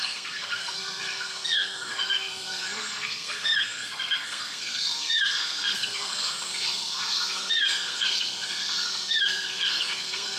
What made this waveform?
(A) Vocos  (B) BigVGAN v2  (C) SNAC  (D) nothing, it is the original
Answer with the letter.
C